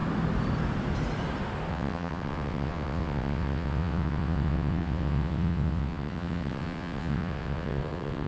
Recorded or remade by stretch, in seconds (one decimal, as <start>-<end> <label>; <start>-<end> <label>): 0.0-1.7 recorded; 1.7-8.3 remade